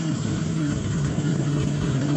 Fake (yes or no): yes